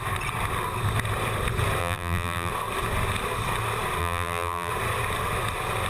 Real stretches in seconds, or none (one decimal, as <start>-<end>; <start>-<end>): 0.0-1.8; 2.5-4.0; 4.7-5.9